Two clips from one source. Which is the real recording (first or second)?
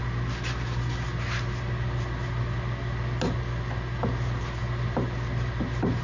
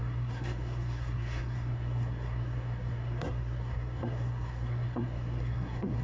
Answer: first